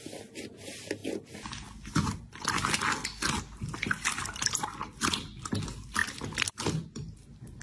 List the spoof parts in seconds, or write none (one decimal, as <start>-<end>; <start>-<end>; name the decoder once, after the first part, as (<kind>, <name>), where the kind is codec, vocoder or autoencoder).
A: none